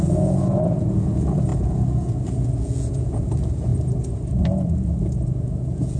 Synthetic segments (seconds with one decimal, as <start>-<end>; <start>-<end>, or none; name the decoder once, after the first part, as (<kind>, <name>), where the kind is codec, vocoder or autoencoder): 0.0-3.7 (vocoder, Vocos); 4.4-6.0